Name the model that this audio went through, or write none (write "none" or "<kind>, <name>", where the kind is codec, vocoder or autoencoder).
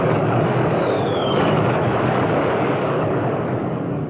codec, DAC